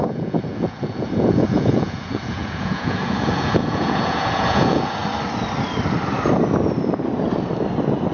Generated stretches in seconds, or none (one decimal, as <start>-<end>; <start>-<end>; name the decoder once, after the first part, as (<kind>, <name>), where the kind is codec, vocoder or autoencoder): 0.0-5.0 (vocoder, Vocos)